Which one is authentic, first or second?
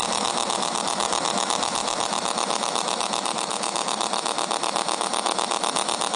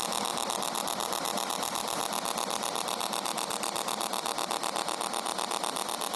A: second